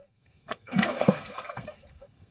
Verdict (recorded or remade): remade